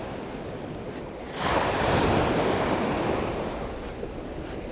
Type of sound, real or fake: real